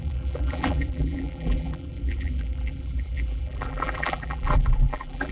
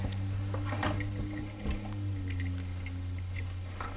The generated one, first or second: first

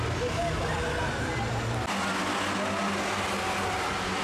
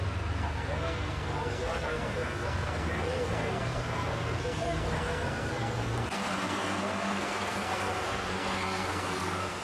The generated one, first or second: second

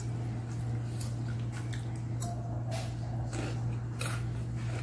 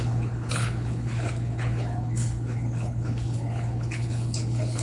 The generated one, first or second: second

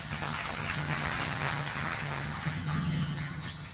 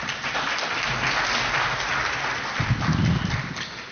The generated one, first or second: first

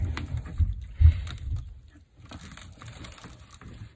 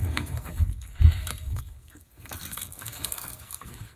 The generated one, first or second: second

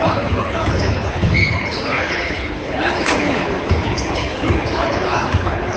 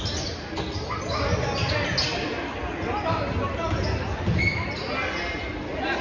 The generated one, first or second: first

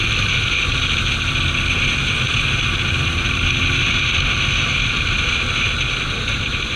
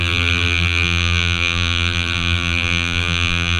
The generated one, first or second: second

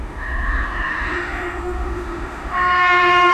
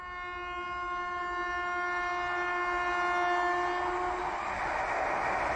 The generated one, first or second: first